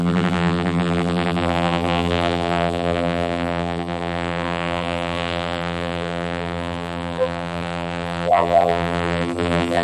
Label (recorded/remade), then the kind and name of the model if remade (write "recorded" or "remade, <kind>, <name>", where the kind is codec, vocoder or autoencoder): remade, vocoder, BigVGAN v2